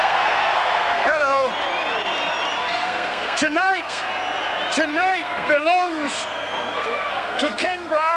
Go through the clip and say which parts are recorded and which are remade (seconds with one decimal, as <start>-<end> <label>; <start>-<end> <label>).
0.0-1.5 remade; 1.5-2.6 recorded; 2.6-4.1 remade; 4.1-4.9 recorded; 4.9-8.2 remade